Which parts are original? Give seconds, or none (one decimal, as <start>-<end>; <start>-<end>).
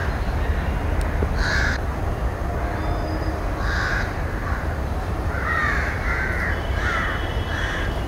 0.0-1.6; 2.0-3.9; 5.6-6.4